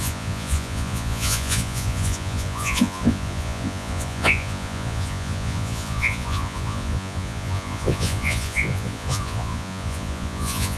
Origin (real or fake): fake